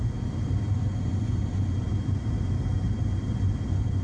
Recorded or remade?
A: recorded